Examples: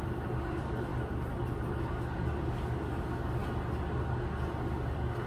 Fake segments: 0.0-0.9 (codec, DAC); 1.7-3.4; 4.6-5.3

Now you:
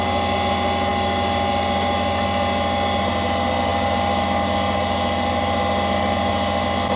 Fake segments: none

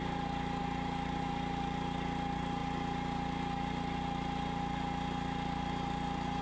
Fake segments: none

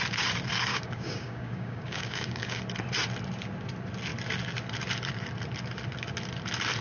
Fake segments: 0.7-2.6 (codec, DAC)

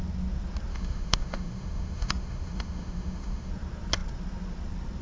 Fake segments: 0.7-3.5 (autoencoder, DAC-VAE)

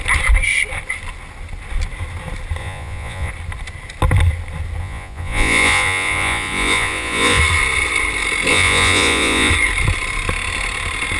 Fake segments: 2.6-3.3 (vocoder, Vocos); 4.8-7.4; 8.5-9.5

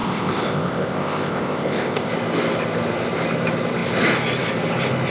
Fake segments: 0.0-2.1 (codec, ZipCodec)

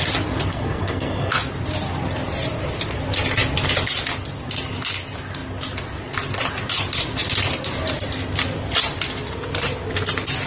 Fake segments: 0.5-1.4 (codec, SNAC)